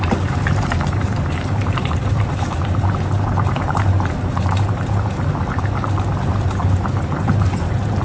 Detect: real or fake fake